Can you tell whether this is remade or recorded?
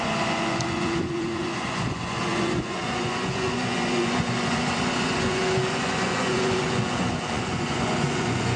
remade